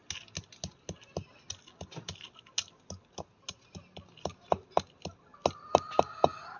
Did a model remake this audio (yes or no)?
no